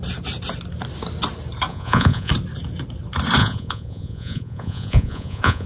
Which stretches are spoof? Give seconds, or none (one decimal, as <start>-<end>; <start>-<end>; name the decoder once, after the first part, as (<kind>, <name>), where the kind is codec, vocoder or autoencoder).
1.7-2.3 (vocoder, Vocos); 3.4-5.7